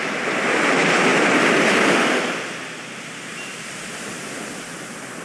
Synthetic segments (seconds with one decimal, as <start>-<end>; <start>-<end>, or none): none